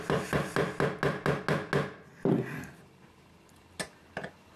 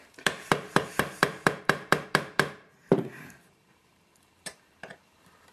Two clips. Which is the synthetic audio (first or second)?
second